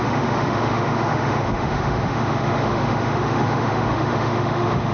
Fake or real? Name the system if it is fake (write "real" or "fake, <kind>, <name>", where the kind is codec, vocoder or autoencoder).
fake, autoencoder, DAC-VAE